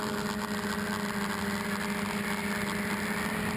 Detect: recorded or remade recorded